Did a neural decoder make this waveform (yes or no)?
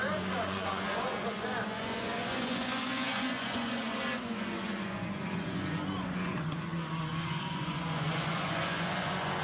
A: yes